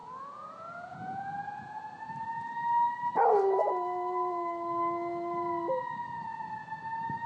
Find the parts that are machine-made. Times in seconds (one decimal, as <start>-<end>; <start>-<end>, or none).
0.0-2.0